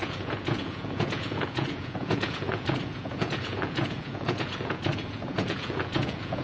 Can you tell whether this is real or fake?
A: fake